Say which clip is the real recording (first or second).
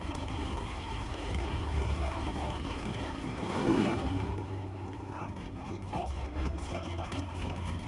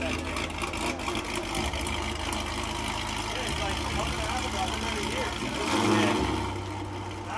second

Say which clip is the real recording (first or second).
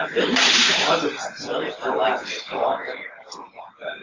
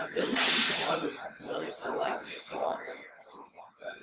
first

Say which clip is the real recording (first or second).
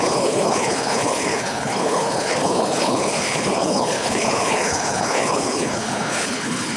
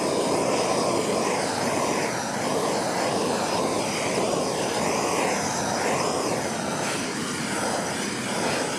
second